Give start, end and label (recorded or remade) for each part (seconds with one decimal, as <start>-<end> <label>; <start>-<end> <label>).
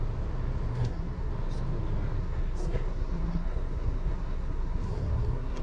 0.0-0.7 recorded; 0.7-1.3 remade; 1.3-2.2 recorded; 2.2-5.6 remade